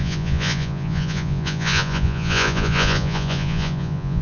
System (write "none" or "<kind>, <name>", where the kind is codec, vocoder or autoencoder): vocoder, Vocos